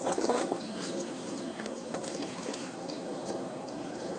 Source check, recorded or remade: remade